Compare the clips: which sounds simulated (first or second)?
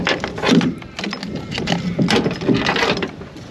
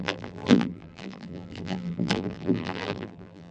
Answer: second